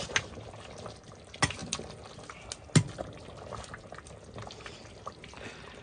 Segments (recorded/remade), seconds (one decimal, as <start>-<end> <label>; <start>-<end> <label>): 0.0-5.8 recorded